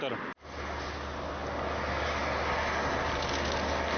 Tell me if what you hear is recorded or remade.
recorded